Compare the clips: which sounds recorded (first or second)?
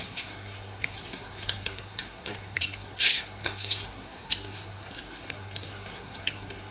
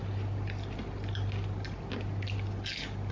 second